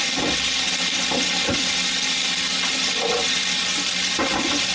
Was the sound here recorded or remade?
recorded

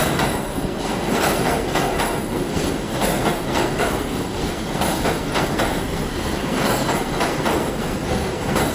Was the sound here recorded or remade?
remade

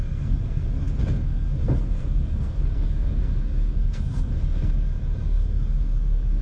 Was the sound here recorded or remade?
remade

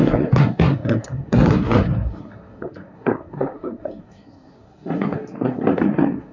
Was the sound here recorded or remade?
remade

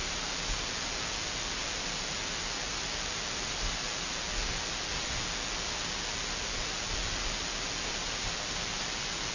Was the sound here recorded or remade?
recorded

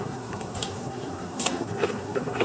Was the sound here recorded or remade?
remade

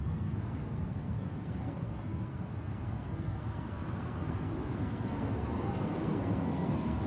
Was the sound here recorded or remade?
remade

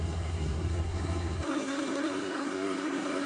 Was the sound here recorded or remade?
remade